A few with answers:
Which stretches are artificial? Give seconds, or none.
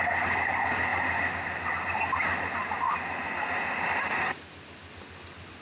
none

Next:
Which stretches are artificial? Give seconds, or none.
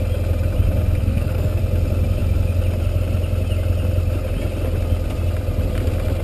1.0-1.6 (codec, SNAC)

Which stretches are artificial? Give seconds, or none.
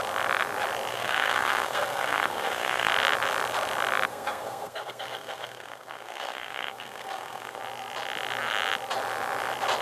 0.9-2.9 (codec, SNAC); 4.1-7.6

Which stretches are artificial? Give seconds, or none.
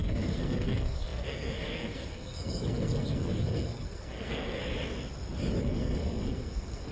0.0-4.6 (codec, SNAC); 5.6-6.9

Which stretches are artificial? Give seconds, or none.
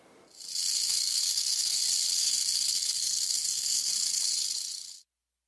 0.7-1.8 (codec, SNAC); 2.2-3.9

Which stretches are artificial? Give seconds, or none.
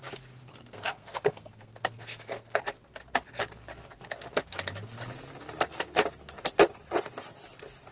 0.5-2.6 (codec, SNAC)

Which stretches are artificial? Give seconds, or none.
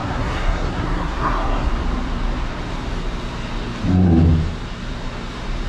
0.0-1.7 (codec, SNAC)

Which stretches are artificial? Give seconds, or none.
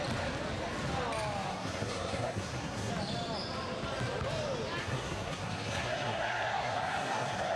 1.5-2.9 (codec, SNAC); 4.8-7.6